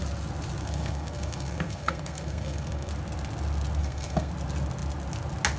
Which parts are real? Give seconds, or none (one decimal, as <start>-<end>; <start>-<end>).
0.0-0.6; 2.9-3.8; 4.3-5.6